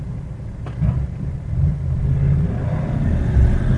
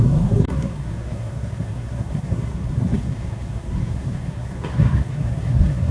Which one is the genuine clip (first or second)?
first